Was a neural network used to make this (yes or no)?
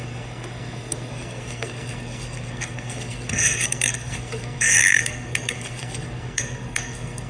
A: yes